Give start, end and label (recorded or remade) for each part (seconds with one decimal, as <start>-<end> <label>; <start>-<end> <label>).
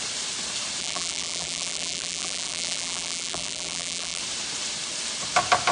0.0-0.8 recorded; 0.8-4.2 remade; 4.2-5.7 recorded